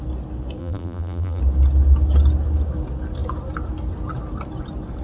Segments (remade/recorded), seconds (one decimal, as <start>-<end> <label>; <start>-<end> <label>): 0.0-0.6 recorded; 0.6-1.4 remade; 1.4-5.0 recorded